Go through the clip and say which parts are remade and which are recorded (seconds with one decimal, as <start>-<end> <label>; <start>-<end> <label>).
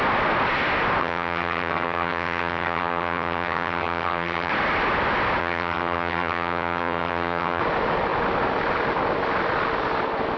0.0-1.0 recorded; 1.0-4.5 remade; 4.5-5.4 recorded; 5.4-7.6 remade; 7.6-10.4 recorded